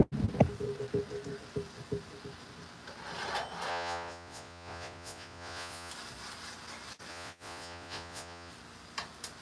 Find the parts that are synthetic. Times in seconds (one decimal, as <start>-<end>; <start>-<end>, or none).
3.7-5.9; 7.1-8.5